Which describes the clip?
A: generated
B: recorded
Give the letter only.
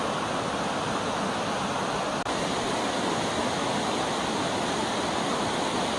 B